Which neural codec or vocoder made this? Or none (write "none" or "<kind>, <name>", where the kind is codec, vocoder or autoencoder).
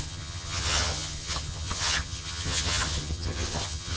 vocoder, HiFi-GAN